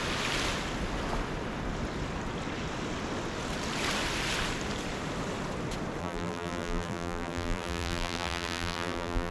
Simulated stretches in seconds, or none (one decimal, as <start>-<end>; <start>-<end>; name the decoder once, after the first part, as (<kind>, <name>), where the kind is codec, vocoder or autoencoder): 6.0-9.3 (vocoder, BigVGAN v2)